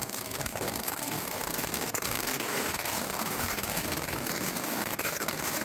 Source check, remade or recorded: remade